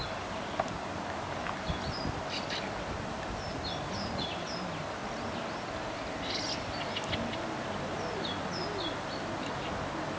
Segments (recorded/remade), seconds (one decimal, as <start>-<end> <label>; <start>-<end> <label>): 0.0-10.2 recorded

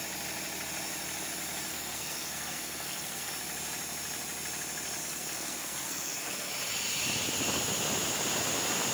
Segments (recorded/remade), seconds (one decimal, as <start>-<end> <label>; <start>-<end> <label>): 0.0-1.7 recorded; 1.7-3.3 remade; 3.3-5.0 recorded; 5.0-6.5 remade; 6.5-8.9 recorded

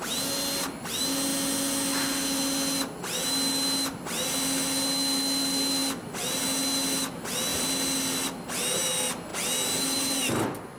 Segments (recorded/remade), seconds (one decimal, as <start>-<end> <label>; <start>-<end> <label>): 0.0-10.8 recorded

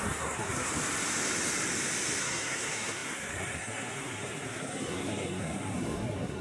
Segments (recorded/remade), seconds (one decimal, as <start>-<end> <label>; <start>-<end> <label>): 0.0-0.7 remade; 0.7-2.2 recorded; 2.2-6.4 remade